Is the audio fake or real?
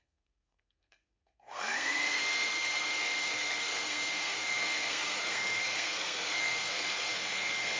fake